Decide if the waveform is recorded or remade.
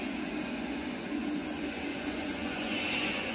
remade